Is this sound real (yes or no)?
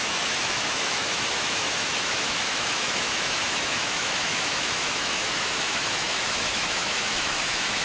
no